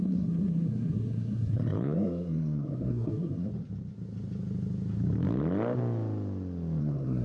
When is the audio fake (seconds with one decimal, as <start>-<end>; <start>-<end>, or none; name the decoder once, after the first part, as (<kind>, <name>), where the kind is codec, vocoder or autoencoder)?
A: 0.0-3.5 (codec, SNAC); 6.8-7.2